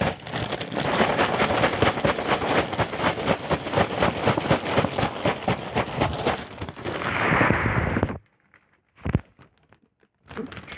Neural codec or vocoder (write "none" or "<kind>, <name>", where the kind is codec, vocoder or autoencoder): none